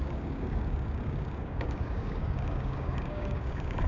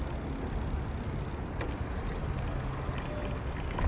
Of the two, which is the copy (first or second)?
first